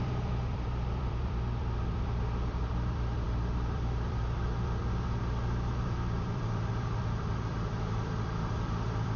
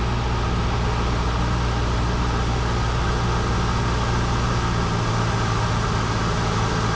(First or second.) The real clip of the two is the second